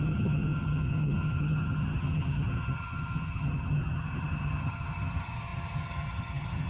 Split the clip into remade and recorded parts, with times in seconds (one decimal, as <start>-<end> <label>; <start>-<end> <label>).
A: 0.0-6.7 remade